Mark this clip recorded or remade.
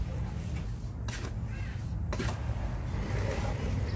recorded